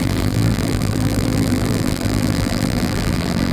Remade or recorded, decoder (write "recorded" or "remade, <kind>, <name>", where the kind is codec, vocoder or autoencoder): remade, vocoder, BigVGAN v2